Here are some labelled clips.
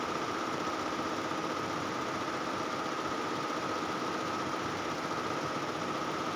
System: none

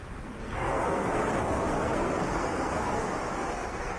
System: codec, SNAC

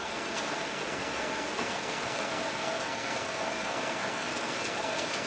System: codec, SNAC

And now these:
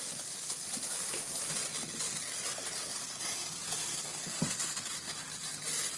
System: none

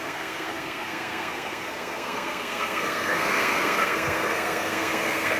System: codec, SNAC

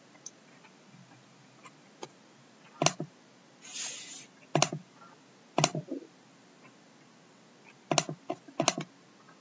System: none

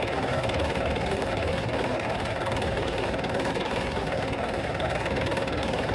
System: codec, SNAC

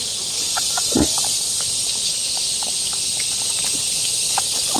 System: none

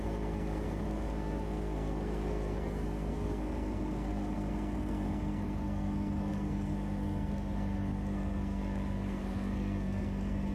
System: codec, SNAC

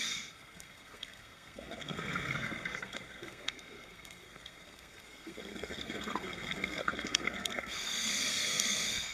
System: codec, SNAC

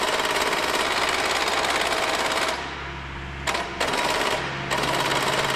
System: none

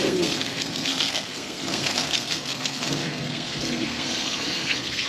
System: codec, SNAC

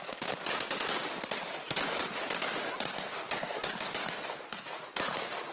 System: none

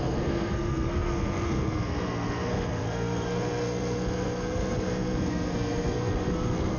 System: codec, SNAC